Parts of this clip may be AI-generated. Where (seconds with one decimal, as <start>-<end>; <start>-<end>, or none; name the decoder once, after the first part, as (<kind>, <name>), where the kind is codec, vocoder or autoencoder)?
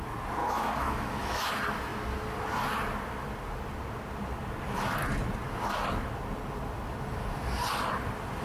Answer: 0.4-1.5 (autoencoder, DAC-VAE)